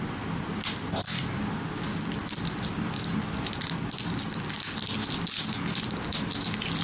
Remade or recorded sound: recorded